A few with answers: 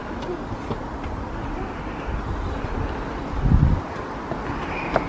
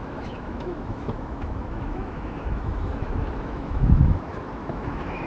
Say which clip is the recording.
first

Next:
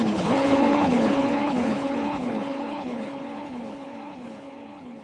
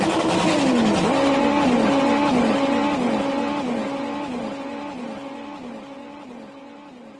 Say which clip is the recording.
second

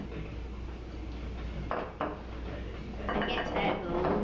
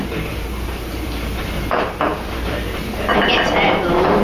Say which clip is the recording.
first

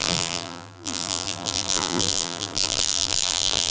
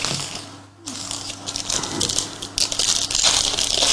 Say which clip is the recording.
second